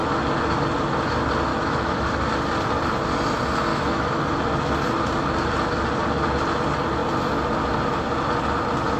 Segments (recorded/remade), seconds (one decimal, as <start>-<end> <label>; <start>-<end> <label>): 0.0-1.5 recorded; 1.5-2.1 remade; 2.1-3.7 recorded; 3.7-4.3 remade; 4.3-9.0 recorded